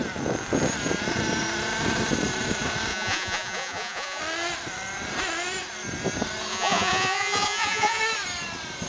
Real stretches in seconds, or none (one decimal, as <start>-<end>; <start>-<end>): 0.0-2.9; 4.2-6.5; 8.0-8.9

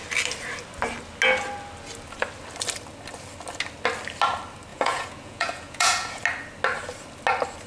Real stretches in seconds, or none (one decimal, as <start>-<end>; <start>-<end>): 0.0-4.7; 6.2-7.7

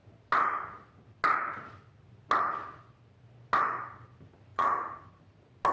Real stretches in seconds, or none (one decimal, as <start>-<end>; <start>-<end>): 0.0-4.5; 5.0-5.7

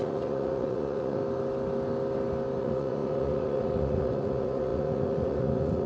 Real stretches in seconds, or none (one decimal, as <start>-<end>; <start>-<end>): 1.2-2.6

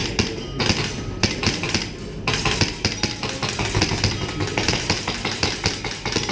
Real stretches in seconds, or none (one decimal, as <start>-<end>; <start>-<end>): 0.0-6.3

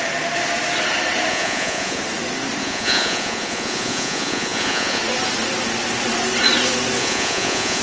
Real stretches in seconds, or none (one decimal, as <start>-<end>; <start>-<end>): 0.0-1.3; 2.0-2.6; 5.0-7.0